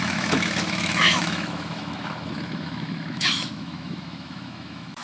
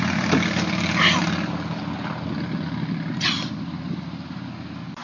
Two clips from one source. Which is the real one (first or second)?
second